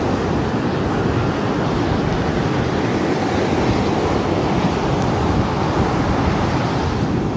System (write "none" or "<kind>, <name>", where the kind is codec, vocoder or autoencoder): none